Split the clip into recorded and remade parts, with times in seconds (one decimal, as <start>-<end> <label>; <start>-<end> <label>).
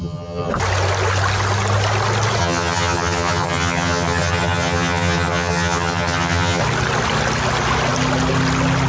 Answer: 0.0-0.5 remade; 0.5-2.4 recorded; 2.4-6.6 remade; 6.6-8.9 recorded